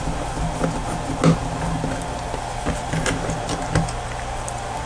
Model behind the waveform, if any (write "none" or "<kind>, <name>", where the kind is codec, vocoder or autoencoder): none